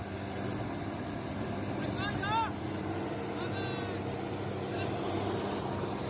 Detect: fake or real real